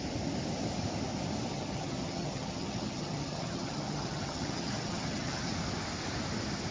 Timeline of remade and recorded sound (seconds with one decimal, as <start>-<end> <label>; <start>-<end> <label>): 0.0-1.5 recorded; 1.5-5.5 remade; 5.5-6.7 recorded